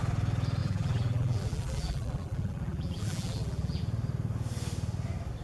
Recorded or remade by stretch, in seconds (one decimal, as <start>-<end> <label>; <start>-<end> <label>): 0.0-0.6 recorded; 0.6-3.8 remade; 3.8-5.4 recorded